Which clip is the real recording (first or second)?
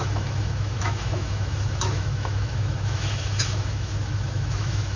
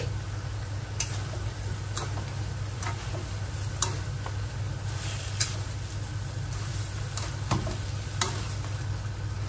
second